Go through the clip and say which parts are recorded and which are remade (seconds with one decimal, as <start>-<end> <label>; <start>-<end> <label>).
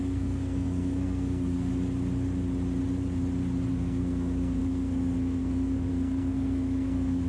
0.0-1.7 remade; 1.7-3.7 recorded; 3.7-7.3 remade